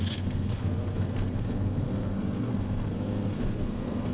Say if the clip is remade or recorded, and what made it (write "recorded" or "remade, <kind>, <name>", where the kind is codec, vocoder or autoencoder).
remade, codec, SNAC